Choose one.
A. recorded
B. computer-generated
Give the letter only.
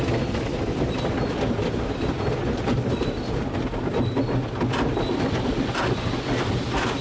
A